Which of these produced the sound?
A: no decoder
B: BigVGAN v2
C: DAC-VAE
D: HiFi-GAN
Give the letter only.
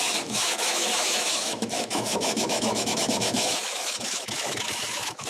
C